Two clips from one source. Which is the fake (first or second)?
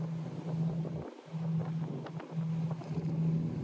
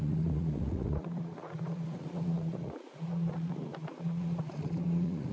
second